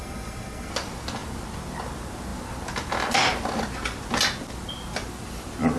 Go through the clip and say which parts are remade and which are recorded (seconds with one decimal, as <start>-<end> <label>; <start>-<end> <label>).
0.0-0.7 remade; 0.7-5.8 recorded